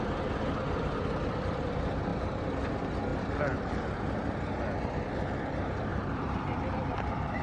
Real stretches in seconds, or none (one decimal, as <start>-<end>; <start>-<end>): 0.0-3.1; 4.4-5.9